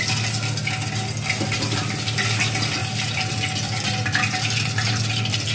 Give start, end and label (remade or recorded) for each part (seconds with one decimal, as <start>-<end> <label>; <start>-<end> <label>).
0.0-5.5 recorded